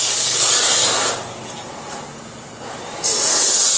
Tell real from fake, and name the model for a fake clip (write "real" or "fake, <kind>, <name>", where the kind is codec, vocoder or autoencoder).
real